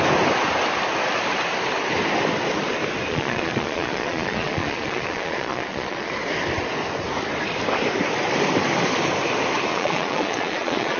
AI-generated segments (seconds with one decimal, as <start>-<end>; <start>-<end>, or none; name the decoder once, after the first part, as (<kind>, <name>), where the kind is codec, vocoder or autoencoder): 3.1-6.1 (vocoder, Vocos); 9.7-11.0